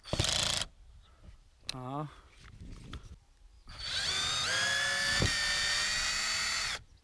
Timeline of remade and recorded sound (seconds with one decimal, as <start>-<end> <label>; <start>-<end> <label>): 0.0-3.5 recorded; 3.5-4.1 remade; 4.1-7.0 recorded